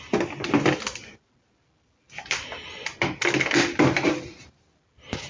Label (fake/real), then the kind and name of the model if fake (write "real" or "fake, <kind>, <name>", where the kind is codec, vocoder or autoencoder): real